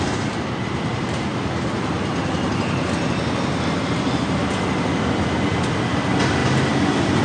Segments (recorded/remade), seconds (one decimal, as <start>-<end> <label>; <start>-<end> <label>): 0.0-7.2 recorded